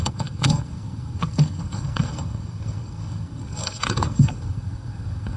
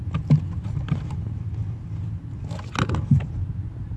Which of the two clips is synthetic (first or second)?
first